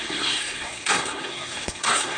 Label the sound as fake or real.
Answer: fake